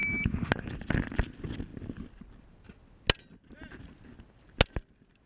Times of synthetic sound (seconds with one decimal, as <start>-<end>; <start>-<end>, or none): none